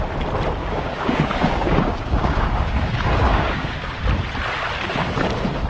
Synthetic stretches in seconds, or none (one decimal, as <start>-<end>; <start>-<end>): 0.6-4.0